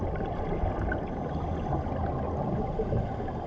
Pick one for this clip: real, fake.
real